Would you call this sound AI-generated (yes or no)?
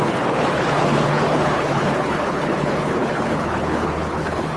yes